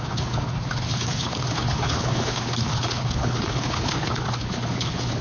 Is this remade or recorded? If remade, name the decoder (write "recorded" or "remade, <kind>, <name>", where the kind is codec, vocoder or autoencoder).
remade, codec, HILCodec